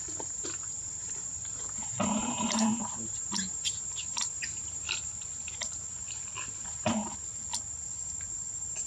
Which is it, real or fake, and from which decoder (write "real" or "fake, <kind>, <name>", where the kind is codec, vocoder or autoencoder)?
real